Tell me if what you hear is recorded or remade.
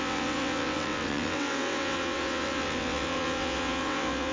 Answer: remade